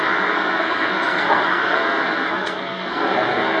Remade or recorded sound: remade